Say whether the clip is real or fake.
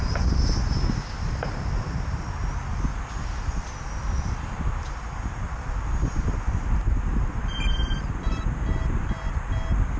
real